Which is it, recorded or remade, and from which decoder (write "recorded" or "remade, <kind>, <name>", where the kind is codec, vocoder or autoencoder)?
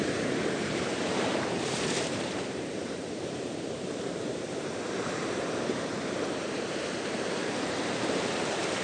remade, vocoder, BigVGAN v2